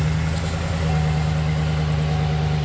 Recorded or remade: recorded